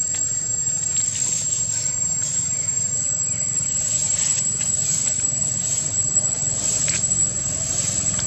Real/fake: fake